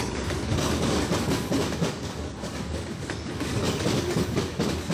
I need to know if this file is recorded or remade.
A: remade